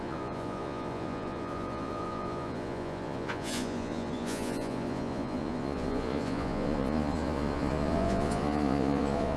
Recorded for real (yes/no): no